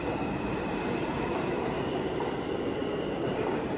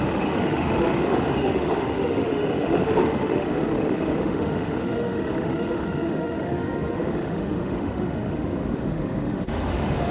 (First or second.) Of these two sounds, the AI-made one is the second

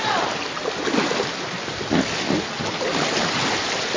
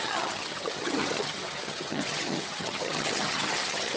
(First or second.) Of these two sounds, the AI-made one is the second